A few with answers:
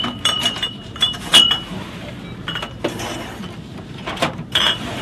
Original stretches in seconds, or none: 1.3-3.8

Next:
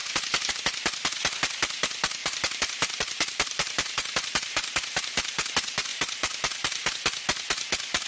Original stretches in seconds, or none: 0.5-2.2; 5.5-5.9; 6.9-8.1

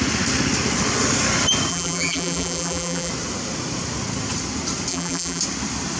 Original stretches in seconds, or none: 0.0-1.7; 3.1-4.9; 5.4-6.0

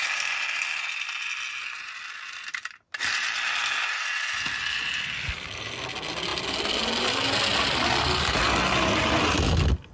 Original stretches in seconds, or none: 0.0-9.9